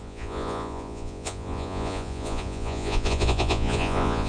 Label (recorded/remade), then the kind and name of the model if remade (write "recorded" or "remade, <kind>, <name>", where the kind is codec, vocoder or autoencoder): remade, vocoder, Vocos